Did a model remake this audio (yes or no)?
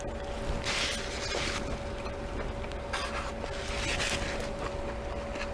no